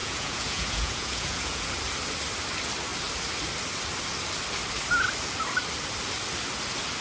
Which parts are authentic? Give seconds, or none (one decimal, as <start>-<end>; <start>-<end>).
1.7-7.0